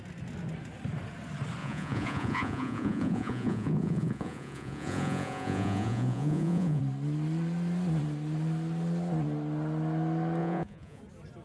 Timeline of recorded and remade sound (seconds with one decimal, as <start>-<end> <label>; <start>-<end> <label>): 0.0-1.6 recorded; 1.6-6.8 remade; 6.8-10.4 recorded; 10.4-11.0 remade; 11.0-11.4 recorded